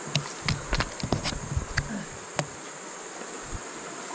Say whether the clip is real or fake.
real